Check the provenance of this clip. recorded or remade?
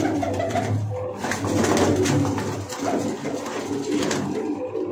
recorded